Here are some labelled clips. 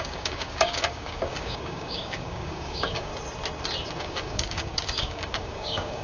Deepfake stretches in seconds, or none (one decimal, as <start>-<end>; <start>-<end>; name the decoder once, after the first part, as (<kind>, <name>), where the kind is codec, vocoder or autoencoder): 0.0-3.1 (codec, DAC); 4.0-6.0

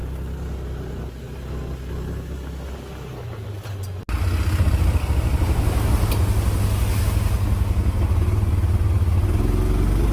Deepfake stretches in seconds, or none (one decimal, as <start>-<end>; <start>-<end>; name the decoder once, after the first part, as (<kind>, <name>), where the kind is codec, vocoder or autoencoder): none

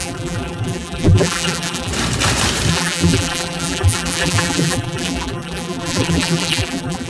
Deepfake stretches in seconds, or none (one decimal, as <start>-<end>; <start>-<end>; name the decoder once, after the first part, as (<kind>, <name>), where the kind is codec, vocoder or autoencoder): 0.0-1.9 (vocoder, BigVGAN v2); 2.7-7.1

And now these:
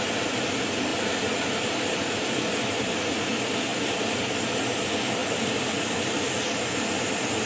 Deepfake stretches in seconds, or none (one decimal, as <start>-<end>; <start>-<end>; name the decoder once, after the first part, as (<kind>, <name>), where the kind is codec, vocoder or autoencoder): 0.9-3.2 (vocoder, BigVGAN v2); 3.7-4.6; 5.2-6.7